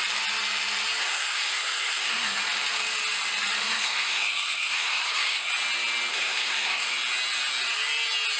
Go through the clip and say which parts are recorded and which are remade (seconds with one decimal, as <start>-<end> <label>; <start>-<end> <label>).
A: 0.0-1.0 recorded; 1.0-2.4 remade; 2.4-3.6 recorded; 3.6-5.5 remade; 5.5-6.1 recorded; 6.1-6.9 remade; 6.9-8.4 recorded